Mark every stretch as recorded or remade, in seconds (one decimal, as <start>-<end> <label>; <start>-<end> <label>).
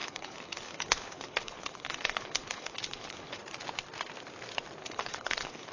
0.0-3.4 remade; 3.4-4.8 recorded; 4.8-5.7 remade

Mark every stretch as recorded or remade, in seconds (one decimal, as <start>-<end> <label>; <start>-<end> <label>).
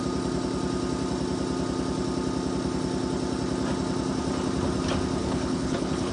0.0-5.2 recorded; 5.2-6.1 remade